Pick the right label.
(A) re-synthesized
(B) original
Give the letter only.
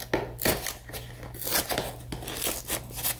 B